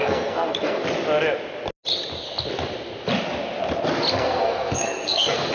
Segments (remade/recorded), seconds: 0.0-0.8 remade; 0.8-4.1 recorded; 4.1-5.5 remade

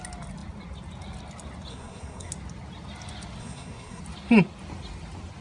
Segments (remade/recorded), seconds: 0.0-1.7 recorded; 1.7-2.3 remade; 2.3-3.4 recorded; 3.4-4.0 remade; 4.0-5.4 recorded

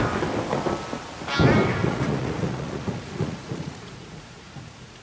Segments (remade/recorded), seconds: 0.0-1.8 recorded; 1.8-5.0 remade

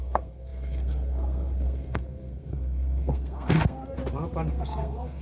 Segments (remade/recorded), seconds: 0.0-4.0 remade; 4.0-4.5 recorded; 4.5-5.2 remade

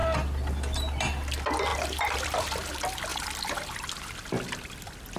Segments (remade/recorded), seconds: 0.0-1.7 recorded; 1.7-2.7 remade; 2.7-5.2 recorded

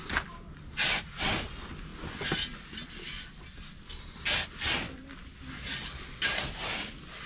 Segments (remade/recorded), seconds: 0.0-7.3 recorded

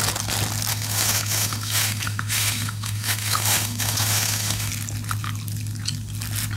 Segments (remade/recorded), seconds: 0.0-0.7 recorded; 0.7-4.7 remade; 4.7-6.6 recorded

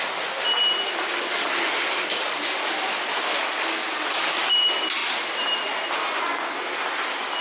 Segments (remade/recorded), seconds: 0.0-5.0 recorded; 5.0-5.9 remade; 5.9-7.4 recorded